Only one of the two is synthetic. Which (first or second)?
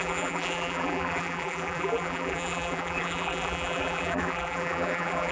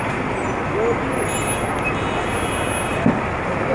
first